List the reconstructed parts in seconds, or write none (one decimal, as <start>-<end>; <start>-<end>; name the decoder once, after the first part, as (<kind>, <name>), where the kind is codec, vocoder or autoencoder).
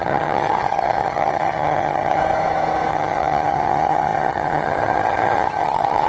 0.0-2.2 (vocoder, HiFi-GAN); 2.9-6.1